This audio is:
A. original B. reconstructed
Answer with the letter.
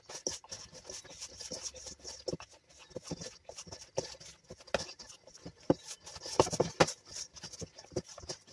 A